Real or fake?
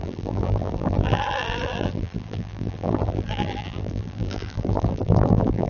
fake